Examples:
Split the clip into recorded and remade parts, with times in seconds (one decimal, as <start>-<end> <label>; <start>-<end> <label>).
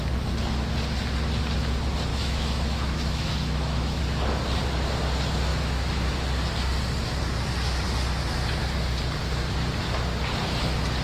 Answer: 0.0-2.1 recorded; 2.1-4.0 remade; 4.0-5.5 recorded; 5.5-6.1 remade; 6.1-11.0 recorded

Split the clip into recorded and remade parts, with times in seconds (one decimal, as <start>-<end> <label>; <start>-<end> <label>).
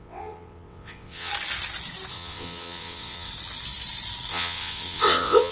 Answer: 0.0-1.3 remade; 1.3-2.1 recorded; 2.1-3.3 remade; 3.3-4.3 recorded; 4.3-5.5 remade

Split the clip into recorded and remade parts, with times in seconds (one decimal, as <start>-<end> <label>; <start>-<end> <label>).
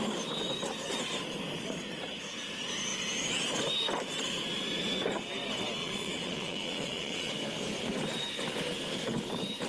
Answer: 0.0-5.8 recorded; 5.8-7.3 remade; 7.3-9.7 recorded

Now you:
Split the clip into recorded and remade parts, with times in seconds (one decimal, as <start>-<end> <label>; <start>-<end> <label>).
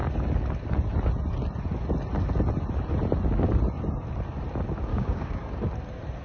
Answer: 0.0-4.9 recorded; 4.9-5.4 remade; 5.4-6.2 recorded